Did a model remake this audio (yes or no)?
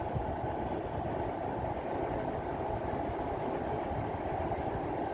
no